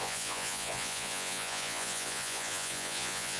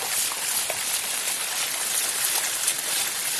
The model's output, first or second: first